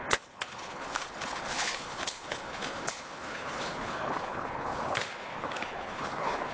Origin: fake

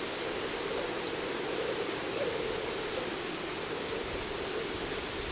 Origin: real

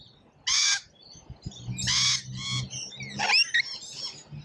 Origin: real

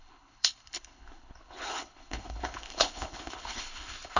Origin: fake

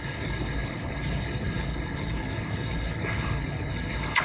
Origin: fake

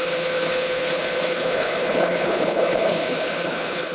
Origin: fake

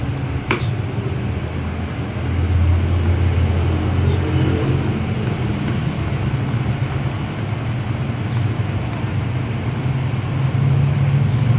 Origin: real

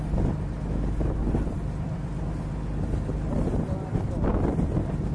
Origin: real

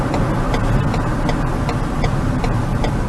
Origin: real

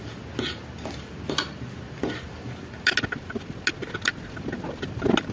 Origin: real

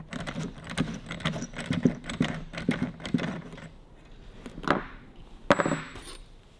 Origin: real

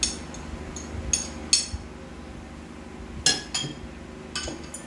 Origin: real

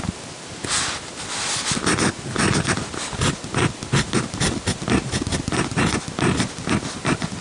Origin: real